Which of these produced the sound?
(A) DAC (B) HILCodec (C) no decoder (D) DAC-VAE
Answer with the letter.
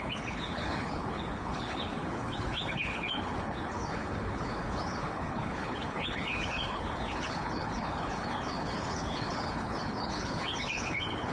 B